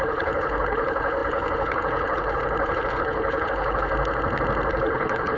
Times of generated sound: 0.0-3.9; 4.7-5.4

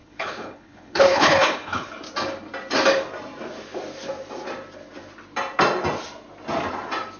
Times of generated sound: 0.0-1.9

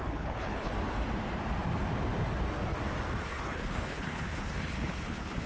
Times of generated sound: 0.0-0.7; 3.2-5.5

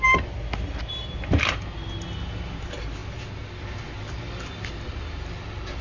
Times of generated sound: none

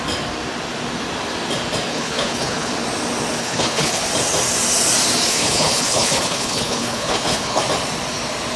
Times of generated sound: 1.9-2.7; 3.4-4.0; 5.3-7.6

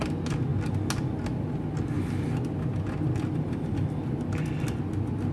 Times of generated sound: none

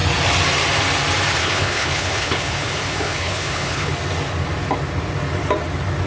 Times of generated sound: 1.4-3.9

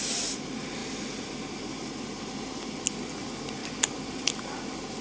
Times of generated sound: none